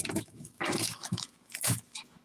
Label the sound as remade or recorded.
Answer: remade